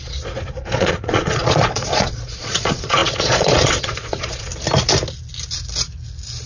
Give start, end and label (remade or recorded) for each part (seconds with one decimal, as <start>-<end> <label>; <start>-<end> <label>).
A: 0.0-4.5 remade; 4.5-6.5 recorded